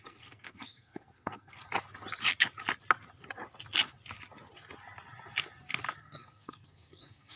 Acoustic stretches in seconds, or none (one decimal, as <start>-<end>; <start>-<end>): 1.6-6.0